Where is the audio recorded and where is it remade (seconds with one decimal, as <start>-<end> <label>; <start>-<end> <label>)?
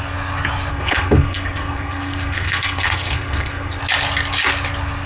0.0-0.7 recorded; 0.7-3.8 remade; 3.8-5.1 recorded